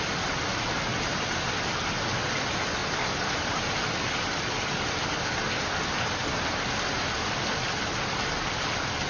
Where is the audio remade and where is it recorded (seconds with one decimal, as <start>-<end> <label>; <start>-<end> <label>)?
0.0-9.1 recorded